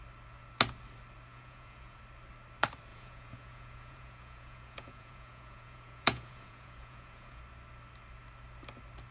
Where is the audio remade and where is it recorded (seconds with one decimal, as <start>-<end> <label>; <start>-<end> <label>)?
0.0-1.3 recorded; 1.3-2.0 remade; 2.0-2.9 recorded; 2.9-7.4 remade; 7.4-9.1 recorded